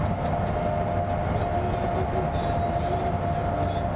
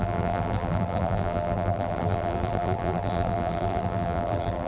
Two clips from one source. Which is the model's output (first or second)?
second